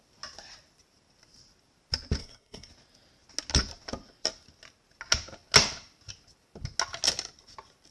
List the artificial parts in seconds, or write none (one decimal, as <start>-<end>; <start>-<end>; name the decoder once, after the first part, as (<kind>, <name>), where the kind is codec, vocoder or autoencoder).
2.2-2.7 (codec, SNAC)